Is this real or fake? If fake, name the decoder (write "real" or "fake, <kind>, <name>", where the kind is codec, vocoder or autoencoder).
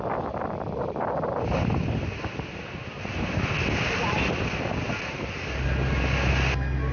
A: real